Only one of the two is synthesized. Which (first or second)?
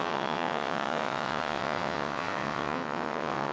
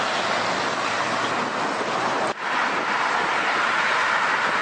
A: first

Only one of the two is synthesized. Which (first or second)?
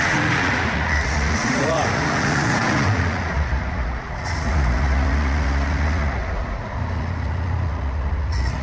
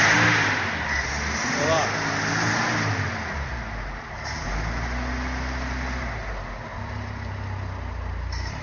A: first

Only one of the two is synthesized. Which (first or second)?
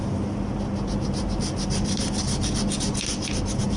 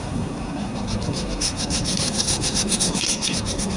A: second